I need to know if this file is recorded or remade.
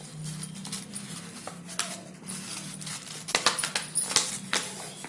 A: recorded